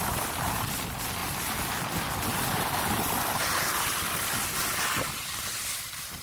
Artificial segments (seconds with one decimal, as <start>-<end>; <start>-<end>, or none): none